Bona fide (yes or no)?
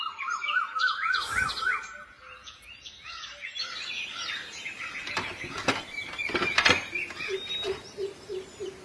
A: no